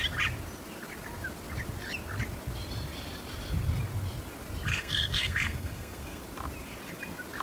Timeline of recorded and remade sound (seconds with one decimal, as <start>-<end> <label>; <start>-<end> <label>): 0.0-4.7 recorded; 4.7-6.2 remade; 6.2-7.4 recorded